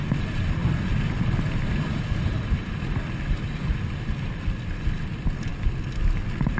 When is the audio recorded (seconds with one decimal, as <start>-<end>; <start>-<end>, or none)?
0.0-6.6